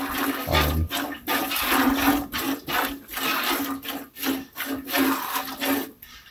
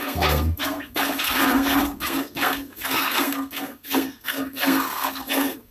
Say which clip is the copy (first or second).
second